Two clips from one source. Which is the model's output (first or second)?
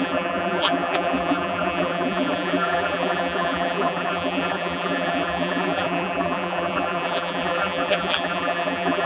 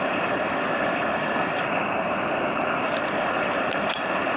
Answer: first